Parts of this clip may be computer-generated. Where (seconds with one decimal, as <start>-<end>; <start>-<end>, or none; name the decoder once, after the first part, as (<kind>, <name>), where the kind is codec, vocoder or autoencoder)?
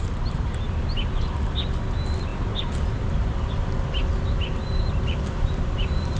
2.3-6.2 (vocoder, BigVGAN v2)